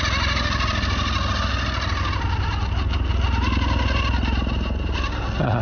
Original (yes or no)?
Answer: yes